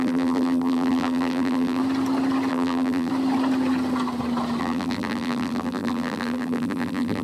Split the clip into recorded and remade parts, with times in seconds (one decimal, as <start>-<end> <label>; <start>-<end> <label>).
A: 0.0-1.8 remade; 1.8-2.5 recorded; 2.5-3.1 remade; 3.1-4.6 recorded; 4.6-7.2 remade